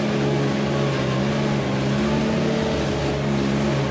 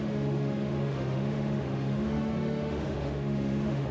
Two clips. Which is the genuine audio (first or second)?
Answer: first